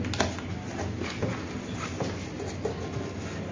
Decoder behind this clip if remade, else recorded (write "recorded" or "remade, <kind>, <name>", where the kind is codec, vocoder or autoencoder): recorded